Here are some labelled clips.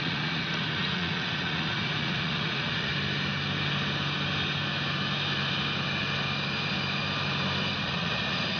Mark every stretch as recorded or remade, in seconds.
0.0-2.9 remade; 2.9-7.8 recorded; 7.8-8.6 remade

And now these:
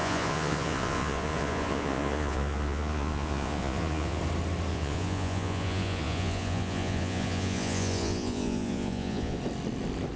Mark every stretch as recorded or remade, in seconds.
0.0-4.2 remade; 4.2-4.7 recorded; 4.7-9.4 remade; 9.4-10.2 recorded

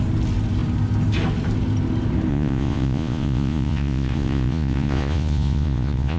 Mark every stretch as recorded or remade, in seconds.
0.0-2.3 recorded; 2.3-6.2 remade

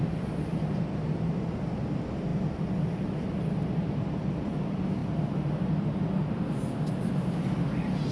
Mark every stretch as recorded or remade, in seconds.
0.0-5.0 recorded; 5.0-5.5 remade; 5.5-8.1 recorded

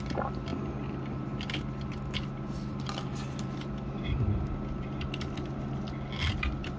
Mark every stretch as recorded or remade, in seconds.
0.0-6.8 recorded

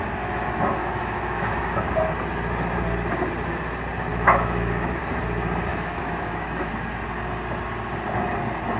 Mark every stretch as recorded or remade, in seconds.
0.0-0.8 recorded; 0.8-1.8 remade; 1.8-4.1 recorded; 4.1-5.0 remade; 5.0-5.7 recorded; 5.7-6.7 remade; 6.7-8.8 recorded

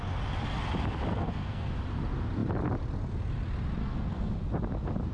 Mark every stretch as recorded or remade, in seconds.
0.0-1.1 recorded; 1.1-1.7 remade; 1.7-3.8 recorded; 3.8-4.3 remade; 4.3-5.1 recorded